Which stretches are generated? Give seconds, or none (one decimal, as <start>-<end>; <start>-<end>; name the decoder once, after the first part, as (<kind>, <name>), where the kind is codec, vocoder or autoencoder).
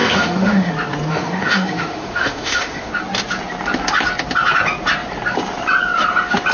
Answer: 0.0-0.7 (autoencoder, DAC-VAE); 1.1-2.9